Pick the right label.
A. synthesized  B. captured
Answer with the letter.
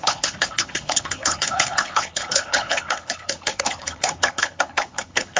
A